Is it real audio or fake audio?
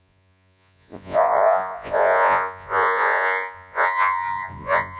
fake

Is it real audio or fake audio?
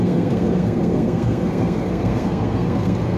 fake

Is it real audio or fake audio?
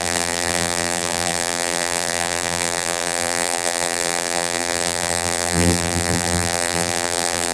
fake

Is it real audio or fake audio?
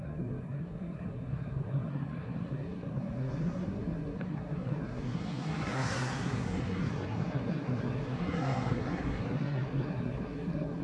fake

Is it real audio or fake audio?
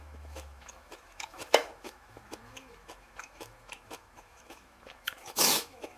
fake